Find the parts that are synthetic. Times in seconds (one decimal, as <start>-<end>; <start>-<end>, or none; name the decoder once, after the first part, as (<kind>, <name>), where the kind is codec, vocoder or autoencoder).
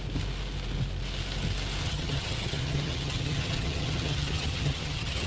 1.8-5.3 (vocoder, HiFi-GAN)